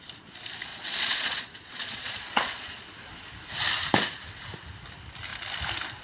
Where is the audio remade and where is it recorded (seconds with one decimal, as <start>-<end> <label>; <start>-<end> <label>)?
0.0-0.7 recorded; 0.7-3.1 remade; 3.1-6.0 recorded